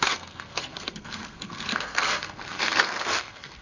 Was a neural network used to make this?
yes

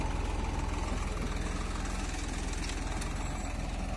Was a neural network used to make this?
no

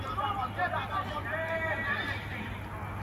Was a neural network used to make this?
no